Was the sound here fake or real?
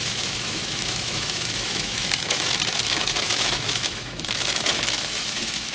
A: fake